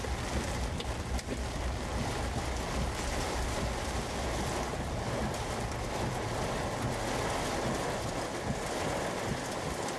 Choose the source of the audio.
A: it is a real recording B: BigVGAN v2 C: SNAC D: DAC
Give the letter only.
A